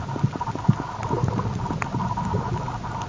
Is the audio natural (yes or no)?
yes